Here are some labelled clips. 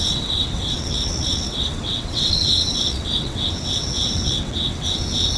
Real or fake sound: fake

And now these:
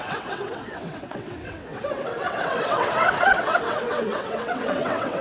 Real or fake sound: fake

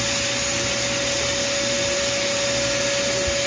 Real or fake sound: real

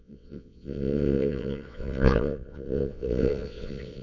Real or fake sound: fake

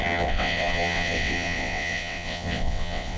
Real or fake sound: fake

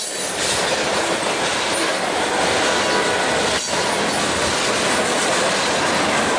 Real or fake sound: real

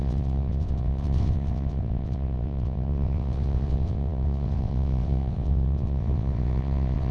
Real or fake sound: fake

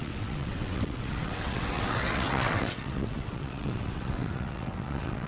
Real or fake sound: fake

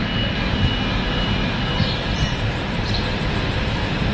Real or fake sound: real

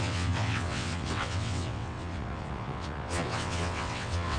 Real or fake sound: fake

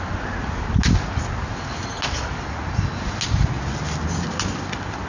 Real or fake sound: real